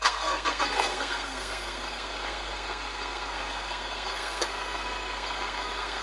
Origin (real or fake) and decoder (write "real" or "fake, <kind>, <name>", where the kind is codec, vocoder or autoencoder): fake, codec, SNAC